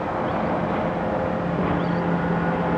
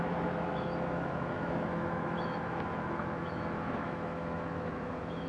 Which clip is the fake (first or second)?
second